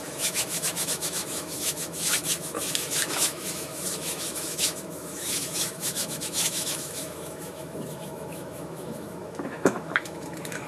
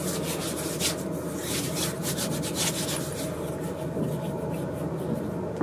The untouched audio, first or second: second